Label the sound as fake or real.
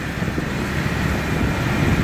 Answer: real